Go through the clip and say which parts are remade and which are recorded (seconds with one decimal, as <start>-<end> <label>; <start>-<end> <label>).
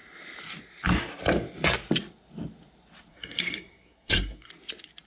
0.0-3.1 recorded; 3.1-4.5 remade; 4.5-5.1 recorded